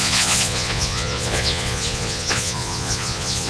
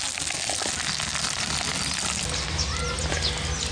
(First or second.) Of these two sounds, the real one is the second